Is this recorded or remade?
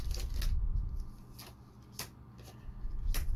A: recorded